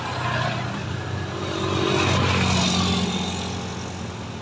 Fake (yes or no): no